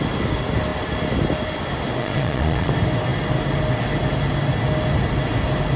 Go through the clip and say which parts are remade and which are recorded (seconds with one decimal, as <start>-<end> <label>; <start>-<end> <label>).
0.0-2.0 recorded; 2.0-2.7 remade; 2.7-5.8 recorded